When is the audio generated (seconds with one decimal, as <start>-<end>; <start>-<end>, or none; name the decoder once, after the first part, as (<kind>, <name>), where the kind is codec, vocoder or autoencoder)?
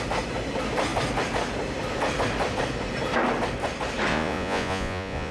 4.1-5.3 (vocoder, Vocos)